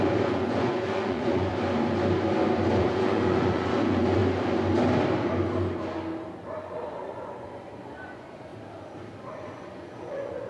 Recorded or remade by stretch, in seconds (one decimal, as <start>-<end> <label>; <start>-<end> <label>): 0.0-1.5 remade; 1.5-2.8 recorded; 2.8-4.2 remade; 4.2-6.6 recorded; 6.6-8.5 remade; 8.5-9.3 recorded; 9.3-10.5 remade